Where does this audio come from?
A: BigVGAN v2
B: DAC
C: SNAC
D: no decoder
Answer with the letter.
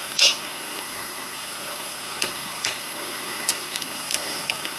C